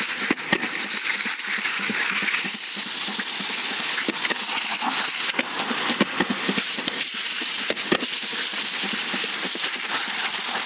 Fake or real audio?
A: real